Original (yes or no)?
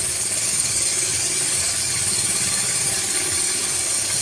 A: no